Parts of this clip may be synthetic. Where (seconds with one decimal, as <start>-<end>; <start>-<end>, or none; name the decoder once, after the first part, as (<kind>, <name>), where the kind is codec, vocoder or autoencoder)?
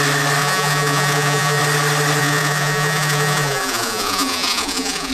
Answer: 0.4-1.6 (vocoder, Vocos); 2.2-5.1